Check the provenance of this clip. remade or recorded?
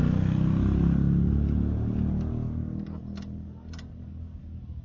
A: recorded